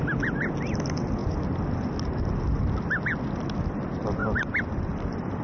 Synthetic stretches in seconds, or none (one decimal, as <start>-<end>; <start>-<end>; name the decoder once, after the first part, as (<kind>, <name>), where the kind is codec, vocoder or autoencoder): 4.2-5.4 (vocoder, BigVGAN v2)